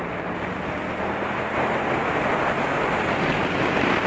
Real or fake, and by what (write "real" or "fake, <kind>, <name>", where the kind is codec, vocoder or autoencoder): real